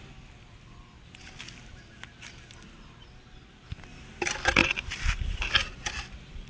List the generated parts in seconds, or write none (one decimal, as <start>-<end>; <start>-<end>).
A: 4.6-6.5